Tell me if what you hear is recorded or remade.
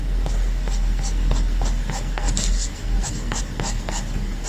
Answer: remade